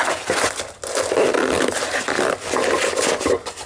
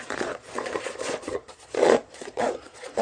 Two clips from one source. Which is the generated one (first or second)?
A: second